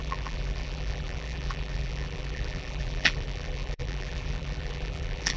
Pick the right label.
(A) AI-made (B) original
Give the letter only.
A